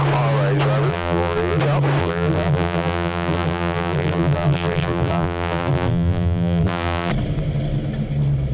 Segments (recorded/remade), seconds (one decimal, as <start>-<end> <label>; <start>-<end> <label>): 0.0-0.9 recorded; 0.9-1.6 remade; 1.6-2.0 recorded; 2.0-7.1 remade; 7.1-8.5 recorded